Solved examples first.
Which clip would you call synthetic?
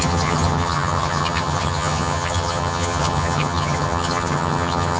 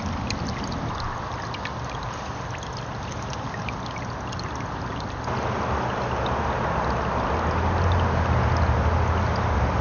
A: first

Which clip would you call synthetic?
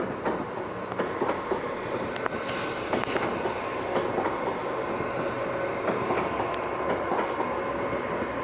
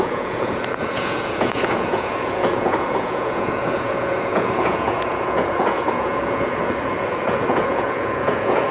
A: second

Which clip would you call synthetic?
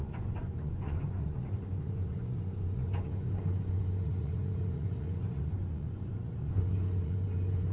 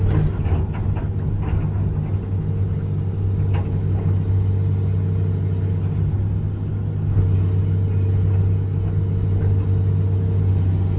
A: first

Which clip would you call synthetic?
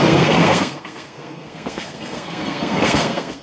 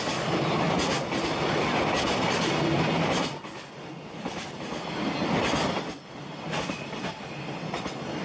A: first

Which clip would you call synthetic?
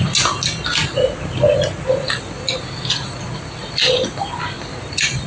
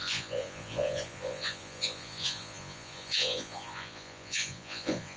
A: second